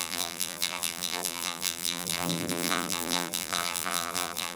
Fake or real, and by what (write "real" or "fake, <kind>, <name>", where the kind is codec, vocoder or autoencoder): fake, vocoder, BigVGAN v2